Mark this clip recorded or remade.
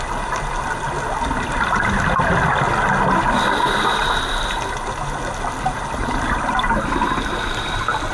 recorded